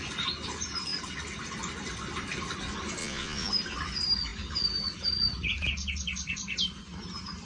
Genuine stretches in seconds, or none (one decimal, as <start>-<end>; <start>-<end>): 0.0-3.0; 3.5-7.5